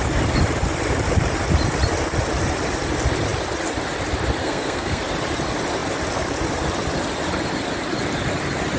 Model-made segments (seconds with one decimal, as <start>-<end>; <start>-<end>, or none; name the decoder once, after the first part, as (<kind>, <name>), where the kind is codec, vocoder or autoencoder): 4.4-5.0 (codec, SNAC)

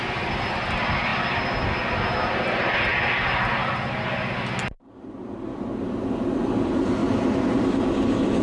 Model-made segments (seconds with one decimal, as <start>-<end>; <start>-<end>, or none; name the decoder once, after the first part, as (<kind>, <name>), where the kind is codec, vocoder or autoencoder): 7.0-7.5 (vocoder, BigVGAN v2)